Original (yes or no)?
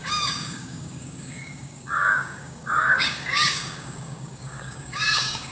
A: no